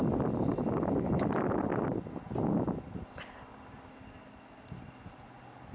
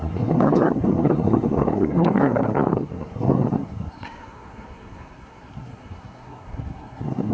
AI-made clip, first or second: second